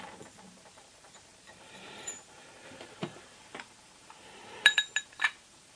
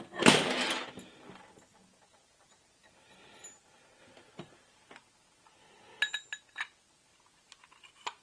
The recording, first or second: second